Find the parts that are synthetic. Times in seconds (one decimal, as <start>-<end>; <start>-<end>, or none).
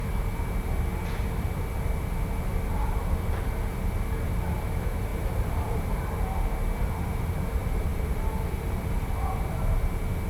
5.1-5.9; 7.9-9.1